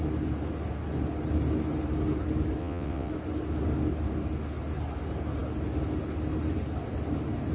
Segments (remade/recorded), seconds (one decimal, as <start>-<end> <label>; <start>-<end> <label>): 0.0-2.6 recorded; 2.6-3.1 remade; 3.1-7.5 recorded